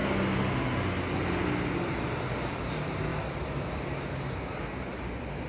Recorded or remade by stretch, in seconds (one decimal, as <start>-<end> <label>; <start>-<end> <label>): 0.0-5.5 recorded